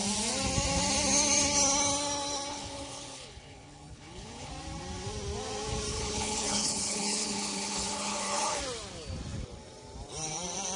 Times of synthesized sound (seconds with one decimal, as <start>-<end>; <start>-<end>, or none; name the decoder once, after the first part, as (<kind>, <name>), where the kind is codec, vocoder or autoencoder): 2.5-4.5 (codec, HILCodec); 5.9-8.6

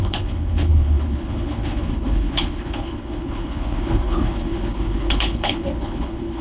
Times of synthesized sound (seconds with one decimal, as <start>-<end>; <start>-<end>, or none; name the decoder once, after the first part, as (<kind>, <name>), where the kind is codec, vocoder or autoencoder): 0.0-6.4 (codec, HILCodec)

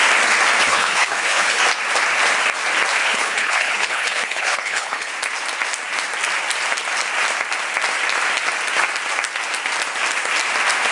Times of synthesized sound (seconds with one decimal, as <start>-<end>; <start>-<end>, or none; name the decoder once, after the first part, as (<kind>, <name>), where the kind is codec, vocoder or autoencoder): 0.7-1.6 (codec, HILCodec); 3.0-5.1

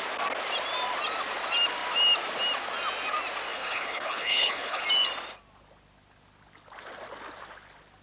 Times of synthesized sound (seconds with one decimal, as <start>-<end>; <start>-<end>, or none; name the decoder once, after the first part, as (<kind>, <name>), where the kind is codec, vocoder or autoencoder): 3.5-4.8 (codec, HILCodec)

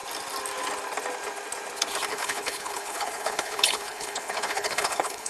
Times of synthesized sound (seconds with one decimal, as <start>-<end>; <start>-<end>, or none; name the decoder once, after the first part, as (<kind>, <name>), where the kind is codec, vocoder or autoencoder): 2.1-5.3 (codec, HILCodec)

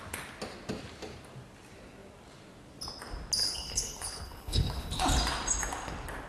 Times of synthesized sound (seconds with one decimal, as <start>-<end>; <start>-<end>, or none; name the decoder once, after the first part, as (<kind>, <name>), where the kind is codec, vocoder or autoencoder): 3.4-5.0 (codec, HILCodec)

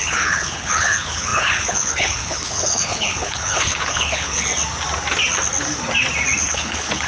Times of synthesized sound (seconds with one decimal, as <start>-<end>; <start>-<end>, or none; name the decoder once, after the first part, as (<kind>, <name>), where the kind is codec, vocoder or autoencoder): 0.0-4.5 (codec, HILCodec); 6.4-7.1